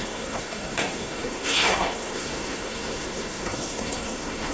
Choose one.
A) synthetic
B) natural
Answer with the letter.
A